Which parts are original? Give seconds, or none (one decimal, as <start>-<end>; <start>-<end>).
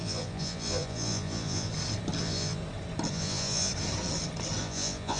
1.7-2.2; 2.6-3.1; 3.7-4.6